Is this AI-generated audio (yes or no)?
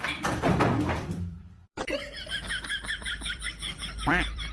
yes